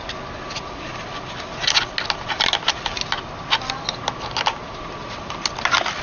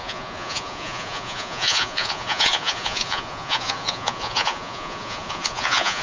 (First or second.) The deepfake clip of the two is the second